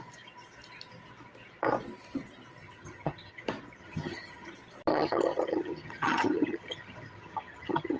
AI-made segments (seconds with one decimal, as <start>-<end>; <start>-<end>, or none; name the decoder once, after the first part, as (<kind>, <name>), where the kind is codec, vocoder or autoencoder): 2.6-3.4 (vocoder, HiFi-GAN); 3.8-4.5; 4.9-8.0